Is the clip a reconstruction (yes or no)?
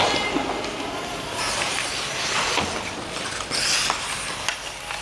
no